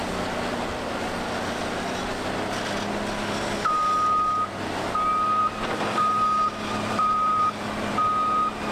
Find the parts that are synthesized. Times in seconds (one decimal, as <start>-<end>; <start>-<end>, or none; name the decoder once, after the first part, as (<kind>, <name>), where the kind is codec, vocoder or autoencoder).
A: 5.4-7.9 (vocoder, BigVGAN v2)